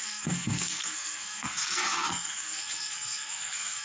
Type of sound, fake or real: fake